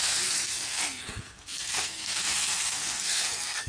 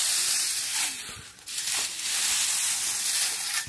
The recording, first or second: second